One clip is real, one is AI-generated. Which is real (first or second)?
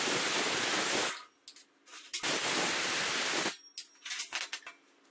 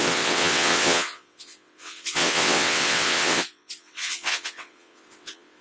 first